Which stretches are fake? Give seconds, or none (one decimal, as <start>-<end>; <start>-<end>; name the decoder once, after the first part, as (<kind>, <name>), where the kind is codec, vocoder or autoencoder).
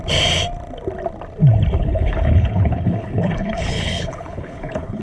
1.8-5.0 (codec, HILCodec)